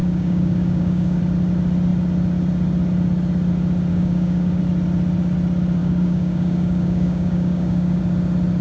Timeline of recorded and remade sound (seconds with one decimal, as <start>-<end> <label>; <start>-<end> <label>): 0.0-1.2 remade; 1.2-3.9 recorded; 3.9-4.6 remade; 4.6-5.8 recorded; 5.8-8.0 remade; 8.0-8.6 recorded